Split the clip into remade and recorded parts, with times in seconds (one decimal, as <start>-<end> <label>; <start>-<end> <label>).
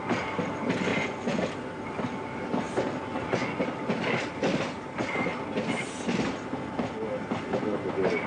0.0-0.9 recorded; 0.9-1.4 remade; 1.4-3.1 recorded; 3.1-3.6 remade; 3.6-8.3 recorded